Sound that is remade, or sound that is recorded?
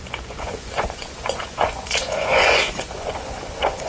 remade